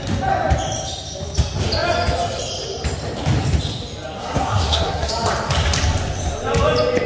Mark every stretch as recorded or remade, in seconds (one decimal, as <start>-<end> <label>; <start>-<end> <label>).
0.0-4.2 recorded; 4.2-5.1 remade; 5.1-7.1 recorded